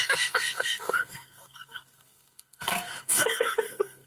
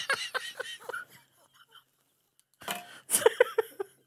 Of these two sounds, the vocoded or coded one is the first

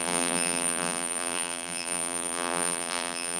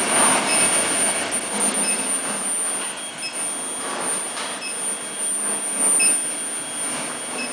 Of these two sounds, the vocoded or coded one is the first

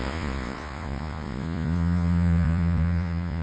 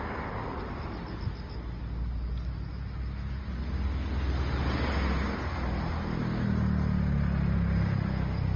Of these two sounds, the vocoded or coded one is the first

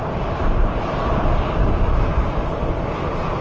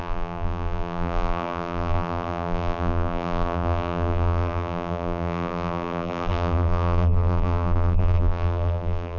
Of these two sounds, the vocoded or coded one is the second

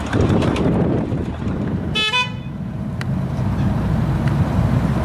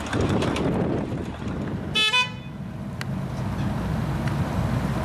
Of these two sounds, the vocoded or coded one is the first